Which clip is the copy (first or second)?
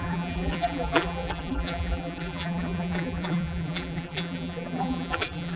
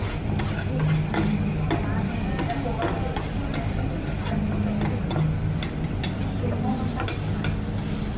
first